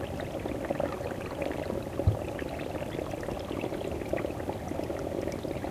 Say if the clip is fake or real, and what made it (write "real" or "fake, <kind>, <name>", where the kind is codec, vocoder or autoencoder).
real